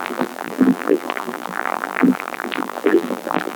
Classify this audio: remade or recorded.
remade